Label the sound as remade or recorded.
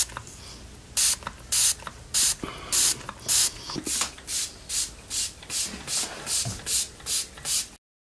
recorded